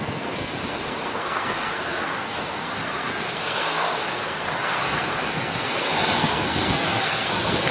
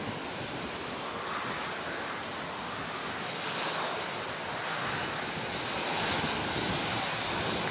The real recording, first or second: second